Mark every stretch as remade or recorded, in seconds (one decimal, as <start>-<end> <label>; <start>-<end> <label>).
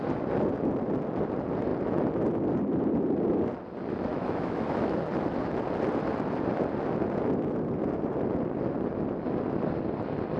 0.0-4.1 recorded; 4.1-5.0 remade; 5.0-10.4 recorded